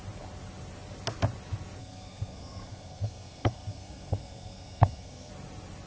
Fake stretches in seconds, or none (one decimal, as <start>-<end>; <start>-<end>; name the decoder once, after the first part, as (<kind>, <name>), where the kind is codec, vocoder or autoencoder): 1.8-5.3 (codec, SNAC)